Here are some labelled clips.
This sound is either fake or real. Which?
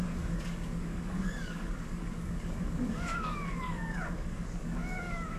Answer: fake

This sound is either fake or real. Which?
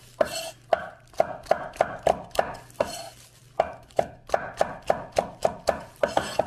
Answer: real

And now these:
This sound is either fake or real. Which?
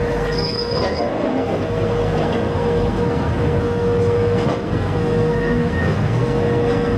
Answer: fake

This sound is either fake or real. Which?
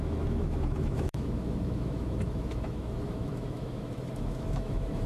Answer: fake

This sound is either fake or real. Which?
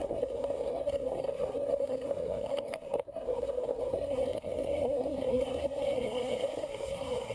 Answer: fake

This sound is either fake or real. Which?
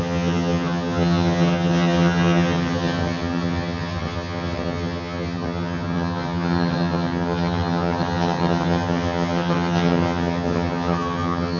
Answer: fake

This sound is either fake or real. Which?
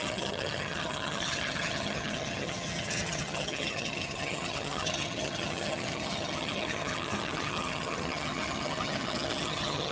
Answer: fake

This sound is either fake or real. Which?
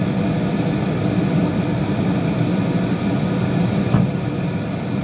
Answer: real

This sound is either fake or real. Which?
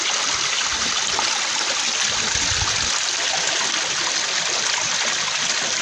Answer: real